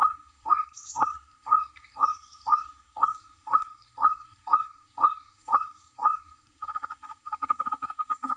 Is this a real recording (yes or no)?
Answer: no